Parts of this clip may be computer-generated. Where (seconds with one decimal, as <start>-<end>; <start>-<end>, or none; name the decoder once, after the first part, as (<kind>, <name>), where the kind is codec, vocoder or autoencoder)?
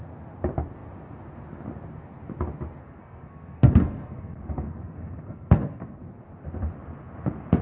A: 2.8-6.0 (codec, SNAC)